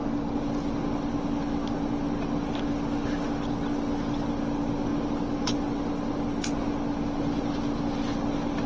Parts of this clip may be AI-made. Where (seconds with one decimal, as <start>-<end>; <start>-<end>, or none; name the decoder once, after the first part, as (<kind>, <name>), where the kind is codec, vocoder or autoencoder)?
none

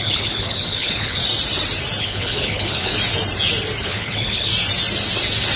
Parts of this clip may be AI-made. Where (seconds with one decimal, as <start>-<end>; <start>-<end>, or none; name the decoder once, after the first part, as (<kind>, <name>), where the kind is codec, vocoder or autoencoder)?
0.0-1.2 (codec, HILCodec); 2.0-2.9; 3.8-4.5

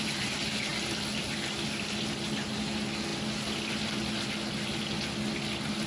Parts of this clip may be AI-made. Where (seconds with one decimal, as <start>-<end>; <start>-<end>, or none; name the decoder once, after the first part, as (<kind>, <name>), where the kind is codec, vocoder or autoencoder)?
none

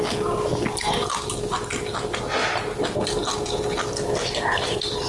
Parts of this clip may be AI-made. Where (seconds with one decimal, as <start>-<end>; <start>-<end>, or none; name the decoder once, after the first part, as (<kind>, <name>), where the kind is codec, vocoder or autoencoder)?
none

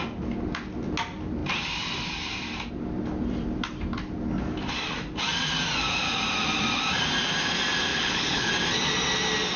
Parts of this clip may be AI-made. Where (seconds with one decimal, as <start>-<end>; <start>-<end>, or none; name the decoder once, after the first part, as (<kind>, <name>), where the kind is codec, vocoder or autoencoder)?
7.9-8.5 (codec, HILCodec)

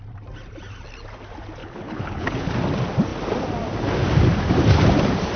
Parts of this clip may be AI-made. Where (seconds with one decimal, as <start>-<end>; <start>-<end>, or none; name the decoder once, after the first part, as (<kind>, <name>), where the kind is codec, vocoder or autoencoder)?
1.6-2.5 (codec, HILCodec)

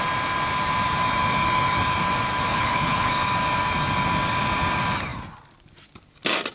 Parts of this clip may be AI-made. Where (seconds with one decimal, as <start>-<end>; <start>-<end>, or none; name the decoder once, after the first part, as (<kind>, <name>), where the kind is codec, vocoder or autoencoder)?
2.5-3.1 (codec, HILCodec)

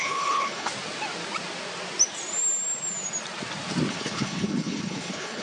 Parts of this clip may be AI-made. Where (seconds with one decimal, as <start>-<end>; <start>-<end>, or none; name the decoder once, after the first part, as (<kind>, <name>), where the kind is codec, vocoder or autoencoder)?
0.0-0.7 (codec, HILCodec); 3.9-5.4